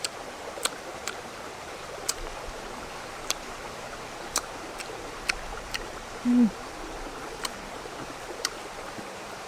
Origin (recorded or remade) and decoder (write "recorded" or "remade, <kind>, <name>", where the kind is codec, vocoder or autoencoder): remade, vocoder, BigVGAN v2